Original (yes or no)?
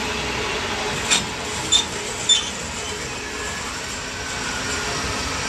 yes